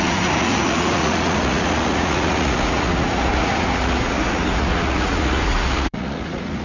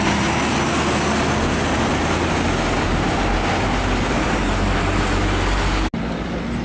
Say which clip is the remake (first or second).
first